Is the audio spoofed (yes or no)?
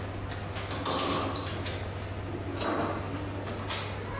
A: no